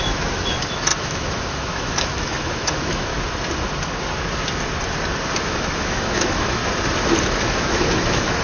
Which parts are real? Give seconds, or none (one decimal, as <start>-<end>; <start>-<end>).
3.1-5.4; 6.6-7.5